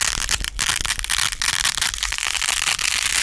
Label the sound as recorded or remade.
recorded